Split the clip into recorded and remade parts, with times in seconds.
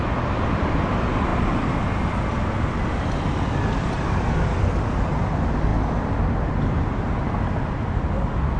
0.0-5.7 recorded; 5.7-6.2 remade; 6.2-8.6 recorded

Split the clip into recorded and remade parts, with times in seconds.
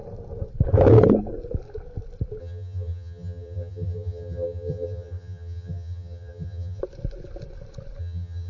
0.0-2.4 recorded; 2.4-6.8 remade; 6.8-8.0 recorded; 8.0-8.5 remade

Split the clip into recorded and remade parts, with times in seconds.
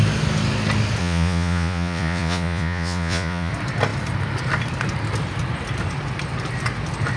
0.0-1.0 recorded; 1.0-3.5 remade; 3.5-7.2 recorded